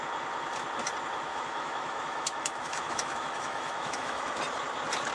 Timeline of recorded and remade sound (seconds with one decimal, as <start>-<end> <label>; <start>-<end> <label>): 0.0-1.3 recorded; 1.3-4.4 remade; 4.4-5.1 recorded